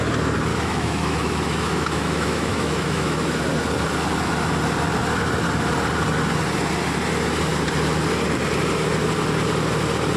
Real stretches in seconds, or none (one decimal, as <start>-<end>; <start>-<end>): 0.0-0.5; 3.4-10.2

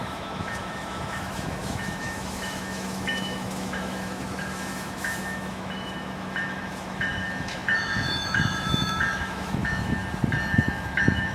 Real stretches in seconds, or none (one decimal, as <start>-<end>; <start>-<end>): 10.0-10.5

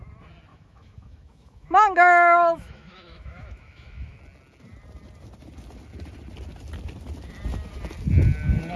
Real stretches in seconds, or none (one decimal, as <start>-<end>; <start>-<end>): 0.0-0.5; 4.2-8.8

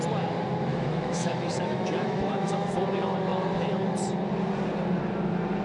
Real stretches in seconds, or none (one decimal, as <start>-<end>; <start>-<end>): 0.0-0.7; 2.7-5.6

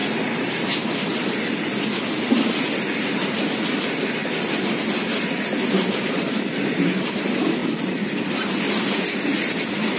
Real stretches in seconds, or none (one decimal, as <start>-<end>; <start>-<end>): 0.0-10.0

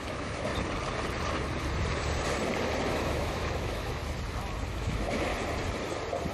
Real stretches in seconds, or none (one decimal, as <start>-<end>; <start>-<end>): 0.5-2.9; 4.0-4.7; 5.3-6.3

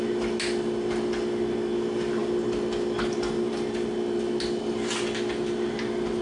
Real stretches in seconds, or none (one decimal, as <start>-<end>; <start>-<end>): 0.0-6.2

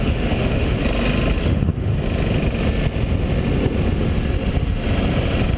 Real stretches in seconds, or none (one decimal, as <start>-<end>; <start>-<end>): 0.8-1.4; 1.9-5.6